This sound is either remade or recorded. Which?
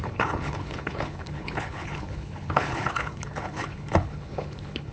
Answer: remade